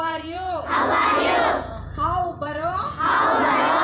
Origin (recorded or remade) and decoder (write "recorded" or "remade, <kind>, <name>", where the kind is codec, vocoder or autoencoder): remade, vocoder, Vocos